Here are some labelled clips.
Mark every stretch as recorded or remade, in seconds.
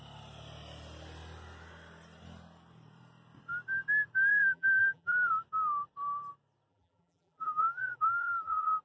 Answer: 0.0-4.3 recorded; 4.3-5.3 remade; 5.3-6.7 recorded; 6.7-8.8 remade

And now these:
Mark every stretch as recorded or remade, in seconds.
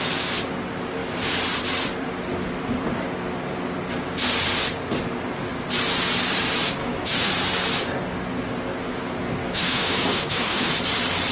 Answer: 0.0-6.8 recorded; 6.8-7.3 remade; 7.3-9.4 recorded; 9.4-10.7 remade; 10.7-11.3 recorded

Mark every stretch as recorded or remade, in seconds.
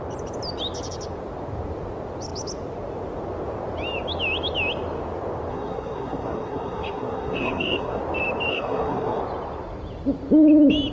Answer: 0.0-5.5 recorded; 5.5-8.0 remade; 8.0-8.5 recorded; 8.5-9.2 remade; 9.2-10.9 recorded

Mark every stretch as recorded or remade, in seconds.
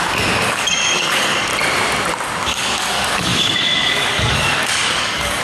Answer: 0.0-1.5 remade; 1.5-2.4 recorded; 2.4-5.4 remade